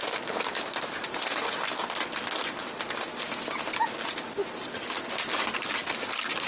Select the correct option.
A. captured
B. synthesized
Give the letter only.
A